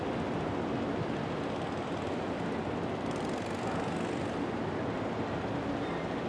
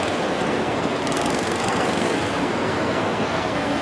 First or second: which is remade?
second